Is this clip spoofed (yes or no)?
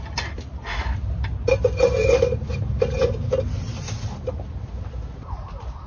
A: no